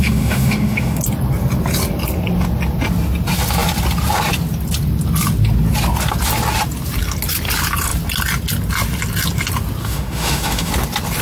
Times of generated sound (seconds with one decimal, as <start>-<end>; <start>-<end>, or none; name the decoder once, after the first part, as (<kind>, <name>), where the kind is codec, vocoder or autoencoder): 0.0-1.0 (autoencoder, DAC-VAE); 9.8-10.7